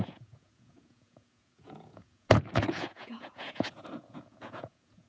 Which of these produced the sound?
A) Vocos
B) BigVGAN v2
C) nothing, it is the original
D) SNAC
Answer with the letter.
A